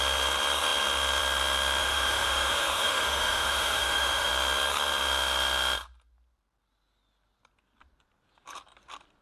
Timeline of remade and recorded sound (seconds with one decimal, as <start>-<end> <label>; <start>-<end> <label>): 0.0-1.8 recorded; 1.8-4.3 remade; 4.3-9.2 recorded